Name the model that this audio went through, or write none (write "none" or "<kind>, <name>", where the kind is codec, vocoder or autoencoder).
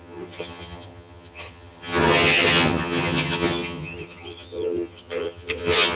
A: vocoder, HiFi-GAN